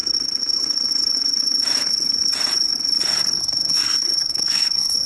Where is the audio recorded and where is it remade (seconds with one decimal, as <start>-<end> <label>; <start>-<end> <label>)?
0.0-3.4 recorded; 3.4-5.1 remade